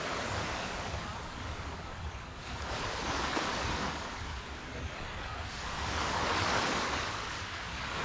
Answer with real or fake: fake